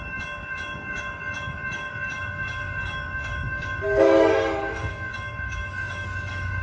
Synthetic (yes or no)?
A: yes